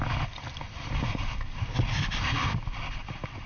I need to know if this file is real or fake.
real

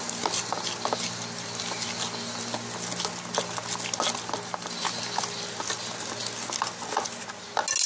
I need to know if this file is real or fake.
real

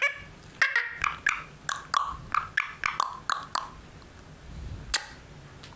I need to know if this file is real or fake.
real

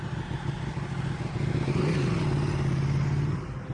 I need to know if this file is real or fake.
real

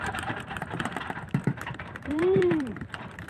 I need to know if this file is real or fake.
fake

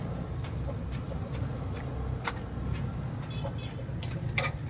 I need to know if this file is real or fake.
real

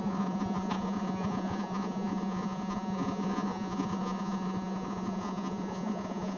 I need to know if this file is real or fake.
fake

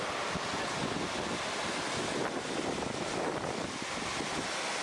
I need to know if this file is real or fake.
real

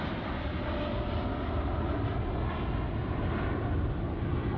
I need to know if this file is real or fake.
real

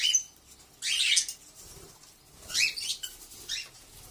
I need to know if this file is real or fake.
real